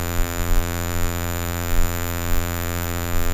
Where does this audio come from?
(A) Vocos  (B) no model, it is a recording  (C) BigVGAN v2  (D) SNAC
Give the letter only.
C